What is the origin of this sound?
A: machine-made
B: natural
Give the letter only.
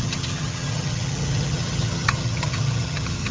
A